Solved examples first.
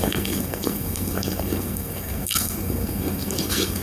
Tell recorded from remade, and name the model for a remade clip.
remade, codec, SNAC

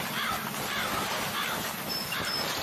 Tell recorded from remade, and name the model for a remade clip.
remade, vocoder, BigVGAN v2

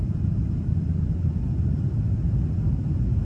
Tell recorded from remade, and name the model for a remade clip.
remade, vocoder, BigVGAN v2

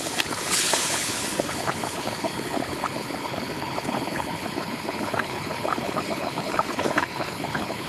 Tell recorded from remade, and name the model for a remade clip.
remade, codec, HILCodec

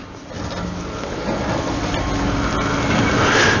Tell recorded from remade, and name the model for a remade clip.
recorded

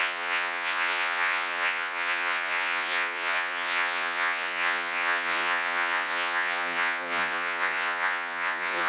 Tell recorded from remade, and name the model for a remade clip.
remade, vocoder, Vocos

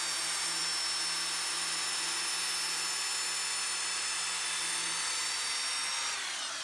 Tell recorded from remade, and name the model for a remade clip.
recorded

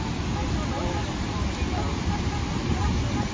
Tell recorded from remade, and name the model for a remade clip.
recorded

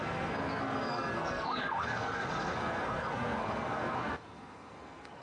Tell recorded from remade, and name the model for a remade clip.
remade, codec, SNAC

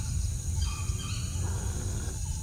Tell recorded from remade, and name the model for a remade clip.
recorded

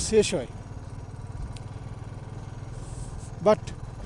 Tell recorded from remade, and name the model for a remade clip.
recorded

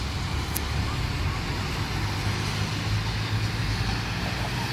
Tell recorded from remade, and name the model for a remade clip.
recorded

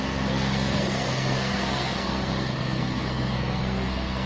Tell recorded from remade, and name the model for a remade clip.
remade, codec, SNAC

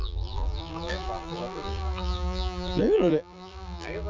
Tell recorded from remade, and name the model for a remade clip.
remade, vocoder, BigVGAN v2